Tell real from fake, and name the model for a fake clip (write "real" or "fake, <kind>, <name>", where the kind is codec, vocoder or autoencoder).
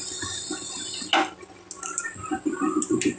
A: real